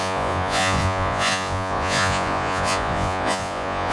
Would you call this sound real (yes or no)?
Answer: no